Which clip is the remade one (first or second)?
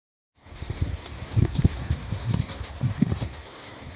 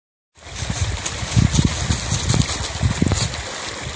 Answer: first